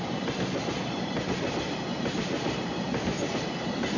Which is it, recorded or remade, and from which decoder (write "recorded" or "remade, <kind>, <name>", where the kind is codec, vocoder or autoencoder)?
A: recorded